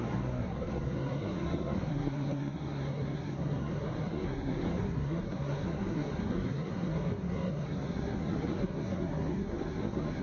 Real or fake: fake